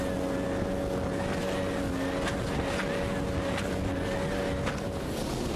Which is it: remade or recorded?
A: recorded